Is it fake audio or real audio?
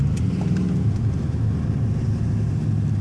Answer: real